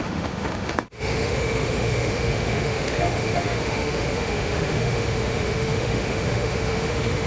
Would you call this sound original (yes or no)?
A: no